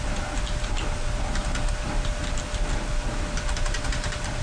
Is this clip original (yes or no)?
yes